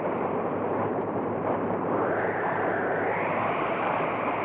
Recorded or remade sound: remade